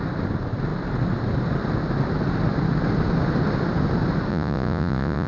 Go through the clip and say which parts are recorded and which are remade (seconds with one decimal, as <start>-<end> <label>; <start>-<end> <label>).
0.0-4.3 recorded; 4.3-5.3 remade